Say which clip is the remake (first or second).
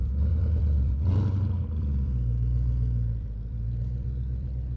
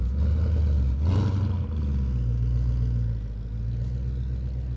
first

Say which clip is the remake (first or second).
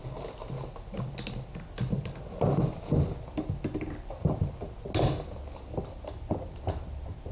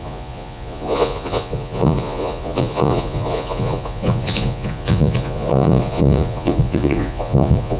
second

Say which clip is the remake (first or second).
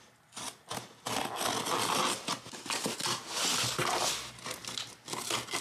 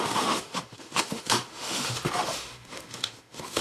second